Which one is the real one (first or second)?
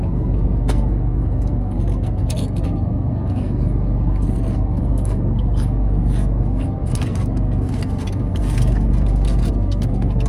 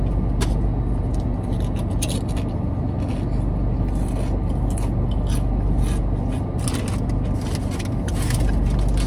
second